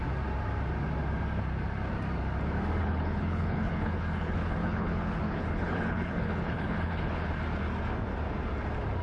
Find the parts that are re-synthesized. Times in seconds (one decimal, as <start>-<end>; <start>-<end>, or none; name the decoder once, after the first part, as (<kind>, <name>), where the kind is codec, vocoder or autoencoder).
2.8-7.3 (codec, HILCodec)

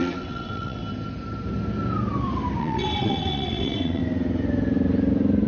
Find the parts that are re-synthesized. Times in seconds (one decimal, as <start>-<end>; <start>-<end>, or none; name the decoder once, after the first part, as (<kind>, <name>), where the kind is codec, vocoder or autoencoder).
0.0-0.8 (vocoder, WaveNeXt); 2.6-4.0

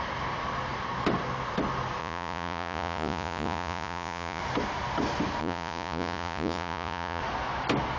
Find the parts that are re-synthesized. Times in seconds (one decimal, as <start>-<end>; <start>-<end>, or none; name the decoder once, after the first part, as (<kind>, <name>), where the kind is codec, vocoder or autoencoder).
2.0-4.4 (vocoder, Vocos); 5.4-7.2

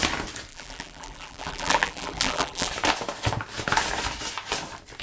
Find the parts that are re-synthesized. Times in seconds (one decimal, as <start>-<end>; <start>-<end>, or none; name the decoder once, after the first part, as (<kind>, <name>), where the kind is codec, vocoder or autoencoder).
0.5-2.7 (vocoder, BigVGAN v2)

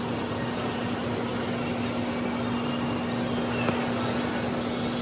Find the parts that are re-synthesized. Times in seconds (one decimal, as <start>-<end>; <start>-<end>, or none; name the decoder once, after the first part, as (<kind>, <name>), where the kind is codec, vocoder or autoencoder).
none

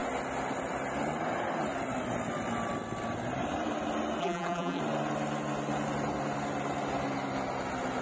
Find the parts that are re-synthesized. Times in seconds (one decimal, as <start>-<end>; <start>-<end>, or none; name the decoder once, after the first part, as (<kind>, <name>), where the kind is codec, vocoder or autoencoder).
4.2-4.8 (vocoder, BigVGAN v2)

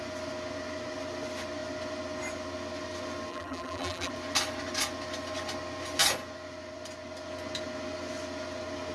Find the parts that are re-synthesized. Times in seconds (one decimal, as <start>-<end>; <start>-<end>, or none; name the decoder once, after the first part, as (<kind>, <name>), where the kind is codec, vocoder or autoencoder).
3.3-4.1 (vocoder, BigVGAN v2)

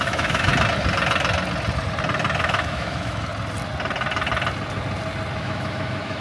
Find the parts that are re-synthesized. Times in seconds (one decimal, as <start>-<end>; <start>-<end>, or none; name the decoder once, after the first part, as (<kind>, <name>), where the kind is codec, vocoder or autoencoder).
0.0-0.5 (autoencoder, DAC-VAE); 2.4-3.3; 5.4-6.2